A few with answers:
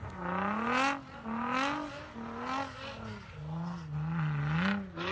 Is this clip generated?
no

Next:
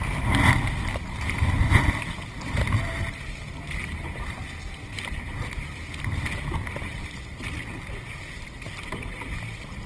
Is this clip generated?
no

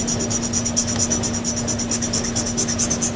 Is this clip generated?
no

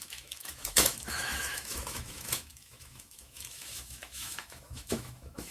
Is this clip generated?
yes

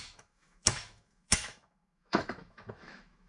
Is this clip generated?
yes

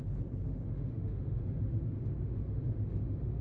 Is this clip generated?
yes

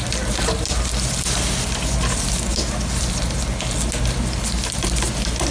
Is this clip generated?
no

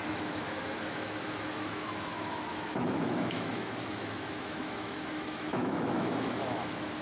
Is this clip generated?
yes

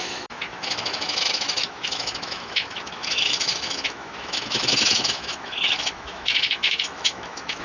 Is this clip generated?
yes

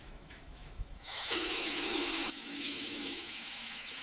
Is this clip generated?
yes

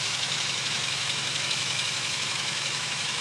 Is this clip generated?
yes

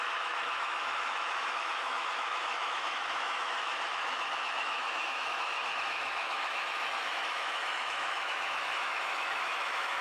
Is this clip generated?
yes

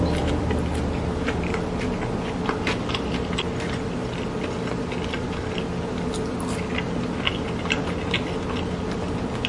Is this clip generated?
no